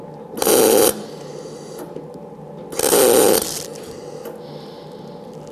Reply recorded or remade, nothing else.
recorded